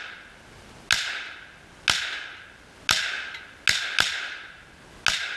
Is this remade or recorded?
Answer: recorded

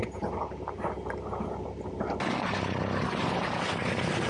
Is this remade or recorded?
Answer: recorded